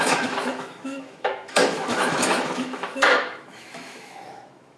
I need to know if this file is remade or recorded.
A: remade